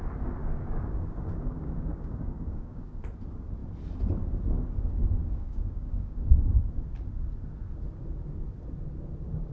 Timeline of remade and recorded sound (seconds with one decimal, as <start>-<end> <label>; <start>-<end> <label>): 0.0-0.4 recorded; 0.4-2.9 remade; 2.9-5.2 recorded; 5.2-6.7 remade; 6.7-9.5 recorded